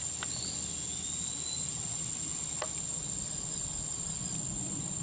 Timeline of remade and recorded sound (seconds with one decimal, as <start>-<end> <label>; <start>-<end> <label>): 0.0-5.0 recorded